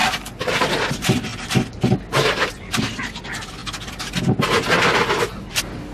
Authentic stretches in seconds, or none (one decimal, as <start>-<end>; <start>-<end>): 0.0-5.9